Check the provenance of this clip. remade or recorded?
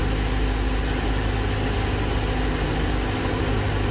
recorded